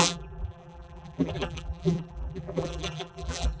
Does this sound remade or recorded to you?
remade